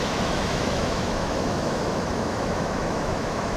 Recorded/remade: remade